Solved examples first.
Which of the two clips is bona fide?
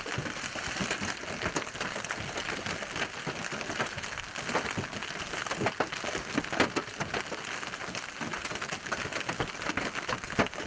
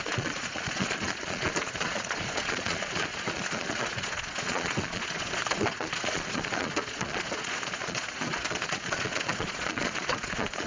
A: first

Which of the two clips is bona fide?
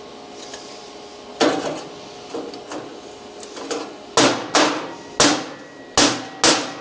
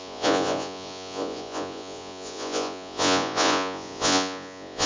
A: first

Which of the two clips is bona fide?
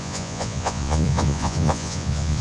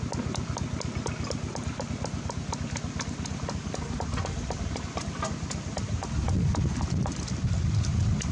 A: second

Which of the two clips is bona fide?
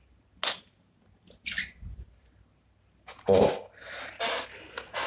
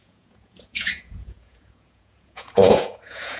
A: first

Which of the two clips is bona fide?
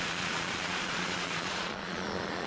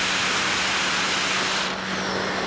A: second